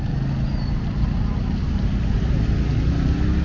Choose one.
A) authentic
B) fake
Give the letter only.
A